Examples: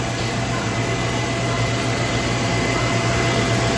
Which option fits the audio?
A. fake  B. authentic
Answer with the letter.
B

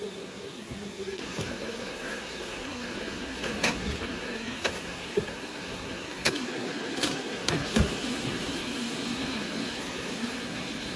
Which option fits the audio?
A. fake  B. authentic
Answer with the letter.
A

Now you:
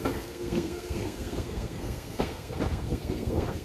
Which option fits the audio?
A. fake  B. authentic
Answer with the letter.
A